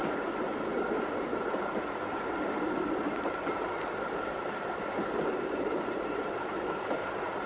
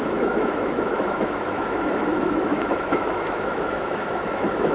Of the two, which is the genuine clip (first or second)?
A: first